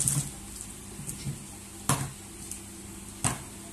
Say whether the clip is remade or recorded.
recorded